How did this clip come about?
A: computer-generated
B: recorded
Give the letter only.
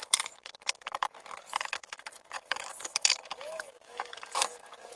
A